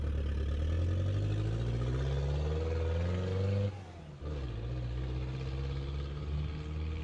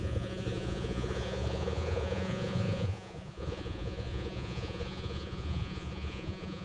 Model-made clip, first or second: second